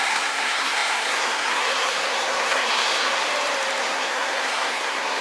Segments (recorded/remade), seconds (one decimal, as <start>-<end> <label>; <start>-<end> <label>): 0.0-3.3 remade; 3.3-3.8 recorded; 3.8-5.2 remade